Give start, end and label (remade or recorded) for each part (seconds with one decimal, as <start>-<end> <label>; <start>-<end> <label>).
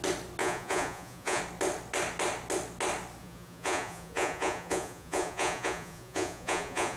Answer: 0.0-0.4 recorded; 0.4-1.4 remade; 1.4-3.2 recorded; 3.2-7.0 remade